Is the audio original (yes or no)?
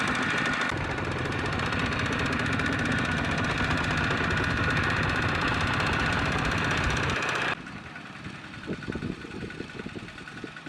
no